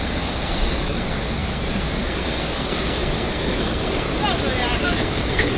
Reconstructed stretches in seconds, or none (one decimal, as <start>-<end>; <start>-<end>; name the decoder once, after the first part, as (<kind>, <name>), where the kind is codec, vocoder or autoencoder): 0.0-4.1 (codec, SNAC); 4.8-5.6